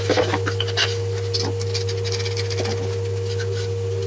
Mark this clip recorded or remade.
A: recorded